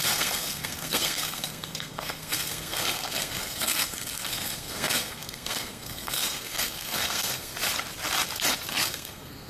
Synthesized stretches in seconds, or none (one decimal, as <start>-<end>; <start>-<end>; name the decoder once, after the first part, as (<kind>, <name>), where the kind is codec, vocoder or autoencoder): 0.0-7.5 (codec, SNAC); 8.7-9.5